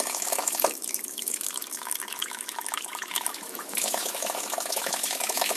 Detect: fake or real fake